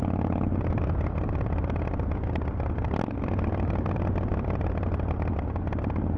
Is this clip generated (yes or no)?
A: no